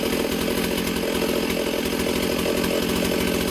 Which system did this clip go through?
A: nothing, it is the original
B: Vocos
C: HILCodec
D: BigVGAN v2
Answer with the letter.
A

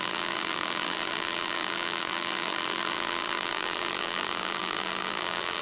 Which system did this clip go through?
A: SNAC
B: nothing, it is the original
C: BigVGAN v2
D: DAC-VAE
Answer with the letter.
C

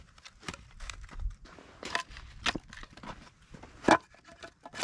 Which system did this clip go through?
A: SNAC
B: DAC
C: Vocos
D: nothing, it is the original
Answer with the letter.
D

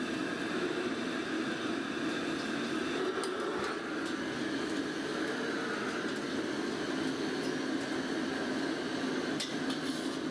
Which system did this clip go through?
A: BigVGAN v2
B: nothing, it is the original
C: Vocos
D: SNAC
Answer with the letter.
B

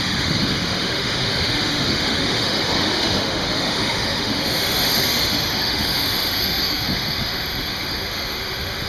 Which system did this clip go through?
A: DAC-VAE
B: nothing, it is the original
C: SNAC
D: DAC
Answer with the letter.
A